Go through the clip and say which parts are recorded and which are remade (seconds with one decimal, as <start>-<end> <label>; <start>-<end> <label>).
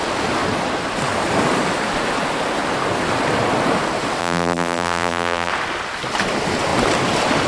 0.0-4.2 recorded; 4.2-5.5 remade; 5.5-7.5 recorded